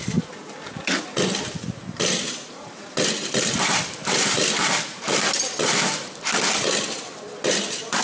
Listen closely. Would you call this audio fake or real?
real